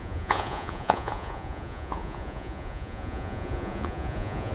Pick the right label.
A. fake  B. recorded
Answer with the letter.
A